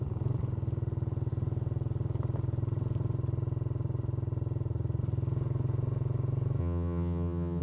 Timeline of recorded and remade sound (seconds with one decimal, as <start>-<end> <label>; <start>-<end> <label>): 0.0-6.6 recorded; 6.6-7.6 remade